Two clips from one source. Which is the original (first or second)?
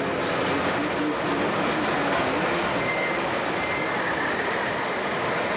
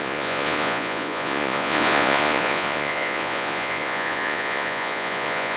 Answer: first